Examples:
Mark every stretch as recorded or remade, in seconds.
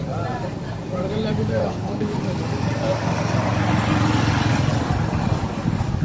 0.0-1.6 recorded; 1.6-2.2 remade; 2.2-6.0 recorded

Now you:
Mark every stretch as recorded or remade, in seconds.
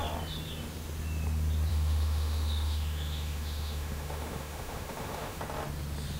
0.0-1.7 recorded; 1.7-5.4 remade; 5.4-6.2 recorded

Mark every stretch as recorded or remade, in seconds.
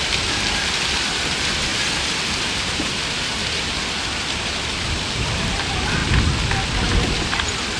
0.0-1.7 remade; 1.7-2.4 recorded; 2.4-6.0 remade; 6.0-7.8 recorded